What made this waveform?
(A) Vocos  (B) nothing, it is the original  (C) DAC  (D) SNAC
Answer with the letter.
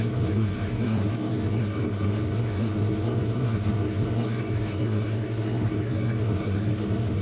D